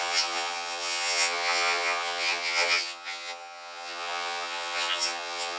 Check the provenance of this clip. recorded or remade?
remade